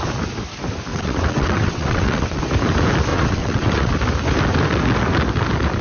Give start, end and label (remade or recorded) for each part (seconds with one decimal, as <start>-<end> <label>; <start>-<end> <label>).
0.0-0.9 recorded; 0.9-2.4 remade; 2.4-3.1 recorded; 3.1-3.9 remade; 3.9-5.8 recorded